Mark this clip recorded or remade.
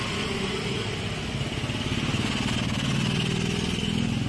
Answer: recorded